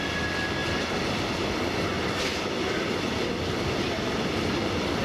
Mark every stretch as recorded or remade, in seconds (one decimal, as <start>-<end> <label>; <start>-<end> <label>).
0.0-5.0 recorded